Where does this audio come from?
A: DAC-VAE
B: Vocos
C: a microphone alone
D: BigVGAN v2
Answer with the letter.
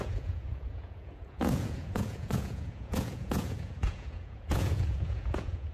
B